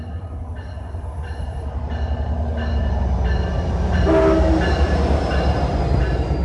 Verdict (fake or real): real